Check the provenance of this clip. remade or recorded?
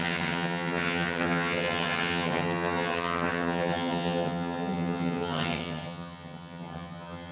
remade